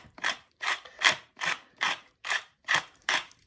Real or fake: fake